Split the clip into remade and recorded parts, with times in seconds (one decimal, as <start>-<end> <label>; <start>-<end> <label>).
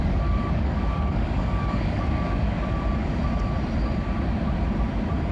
0.0-3.2 remade; 3.2-5.3 recorded